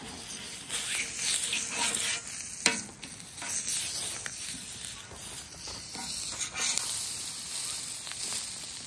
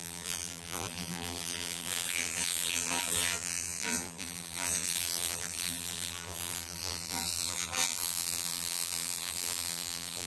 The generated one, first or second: second